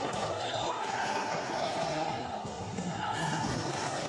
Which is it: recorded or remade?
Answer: remade